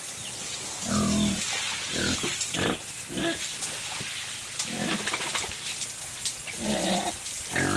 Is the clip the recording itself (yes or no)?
yes